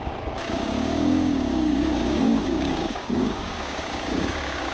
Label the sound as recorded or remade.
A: remade